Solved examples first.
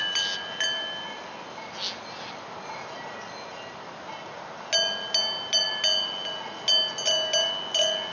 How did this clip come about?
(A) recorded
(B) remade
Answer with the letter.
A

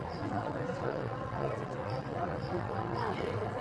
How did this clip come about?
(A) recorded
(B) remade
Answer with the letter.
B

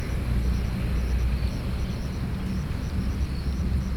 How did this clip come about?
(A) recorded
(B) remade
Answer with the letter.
A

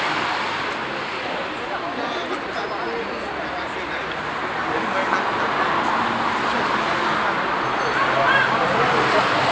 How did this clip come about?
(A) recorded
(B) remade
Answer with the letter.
A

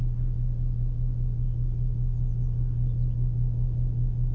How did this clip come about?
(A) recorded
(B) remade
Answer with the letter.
A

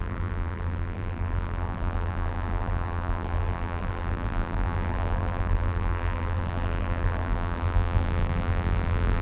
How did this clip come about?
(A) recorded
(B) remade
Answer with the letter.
B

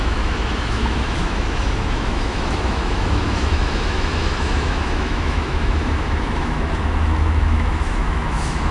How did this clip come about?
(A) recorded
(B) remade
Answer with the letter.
B